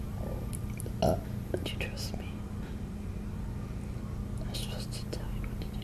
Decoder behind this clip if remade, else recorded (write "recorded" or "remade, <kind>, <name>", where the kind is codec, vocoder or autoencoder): recorded